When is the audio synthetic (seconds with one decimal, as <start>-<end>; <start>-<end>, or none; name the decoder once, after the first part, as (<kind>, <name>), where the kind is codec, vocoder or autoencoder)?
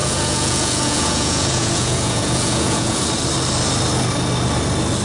0.0-3.0 (vocoder, Vocos)